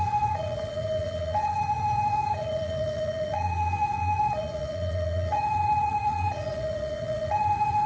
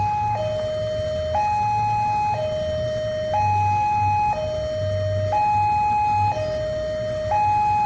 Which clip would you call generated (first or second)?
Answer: first